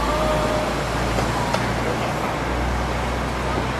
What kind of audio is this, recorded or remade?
recorded